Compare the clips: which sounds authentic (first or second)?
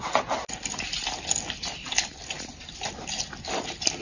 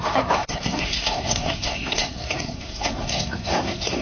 first